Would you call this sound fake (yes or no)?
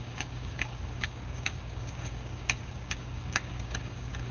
yes